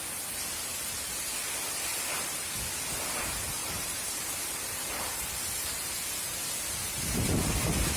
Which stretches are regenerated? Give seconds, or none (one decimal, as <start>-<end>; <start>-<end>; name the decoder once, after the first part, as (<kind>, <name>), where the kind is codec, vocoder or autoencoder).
3.6-5.9 (vocoder, BigVGAN v2)